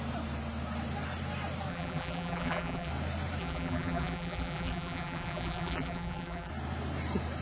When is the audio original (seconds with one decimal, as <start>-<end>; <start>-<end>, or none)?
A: 0.0-1.7; 2.9-3.4; 6.5-7.4